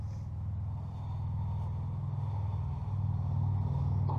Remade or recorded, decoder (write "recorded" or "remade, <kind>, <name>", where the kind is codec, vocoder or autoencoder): recorded